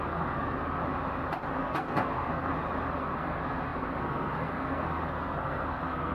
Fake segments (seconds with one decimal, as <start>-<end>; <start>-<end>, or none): 0.0-0.8; 1.6-2.5; 3.0-6.1